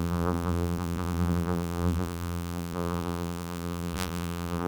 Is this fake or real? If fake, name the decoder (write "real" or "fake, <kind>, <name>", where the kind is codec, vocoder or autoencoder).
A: fake, vocoder, BigVGAN v2